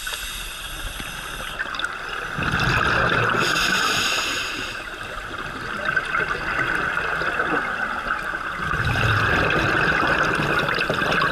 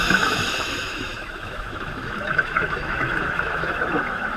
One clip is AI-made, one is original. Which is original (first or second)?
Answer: first